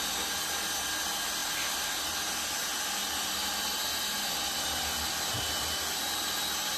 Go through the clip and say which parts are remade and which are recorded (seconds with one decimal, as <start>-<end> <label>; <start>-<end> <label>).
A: 0.0-6.8 recorded

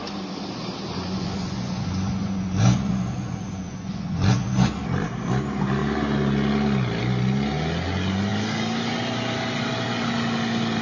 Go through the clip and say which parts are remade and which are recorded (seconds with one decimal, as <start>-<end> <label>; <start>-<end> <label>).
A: 0.0-0.9 recorded; 0.9-4.8 remade; 4.8-10.8 recorded